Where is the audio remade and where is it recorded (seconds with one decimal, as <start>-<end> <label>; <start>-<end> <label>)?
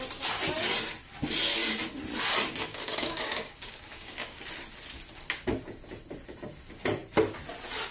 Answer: 0.0-2.7 recorded; 2.7-4.4 remade; 4.4-7.9 recorded